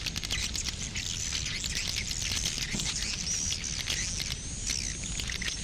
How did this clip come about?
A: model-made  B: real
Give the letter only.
B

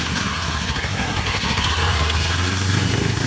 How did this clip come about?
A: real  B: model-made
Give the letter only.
B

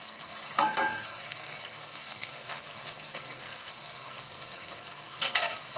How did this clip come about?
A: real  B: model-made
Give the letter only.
B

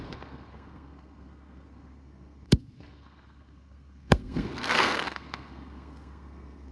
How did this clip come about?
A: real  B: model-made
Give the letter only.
B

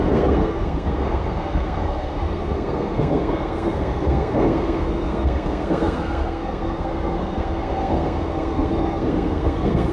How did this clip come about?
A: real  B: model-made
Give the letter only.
B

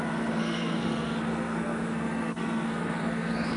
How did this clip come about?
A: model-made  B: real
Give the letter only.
A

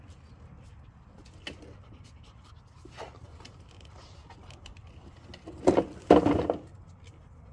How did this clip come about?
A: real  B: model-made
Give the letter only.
A